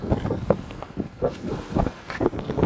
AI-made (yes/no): yes